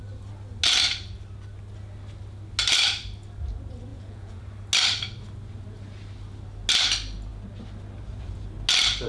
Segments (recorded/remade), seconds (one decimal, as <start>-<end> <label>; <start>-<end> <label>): 0.0-3.9 recorded; 3.9-4.4 remade; 4.4-9.1 recorded